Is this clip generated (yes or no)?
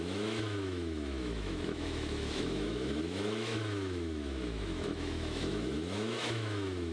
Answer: yes